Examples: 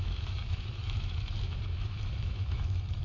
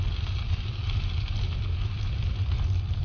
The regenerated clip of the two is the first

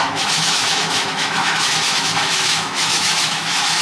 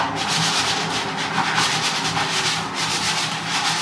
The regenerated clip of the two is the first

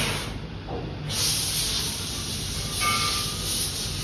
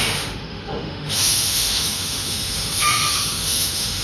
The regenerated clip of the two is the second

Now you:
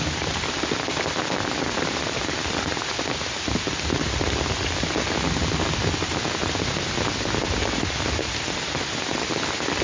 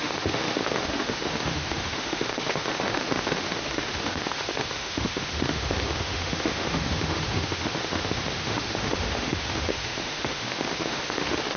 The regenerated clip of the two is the second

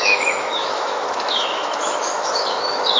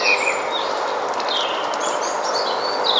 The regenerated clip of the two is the first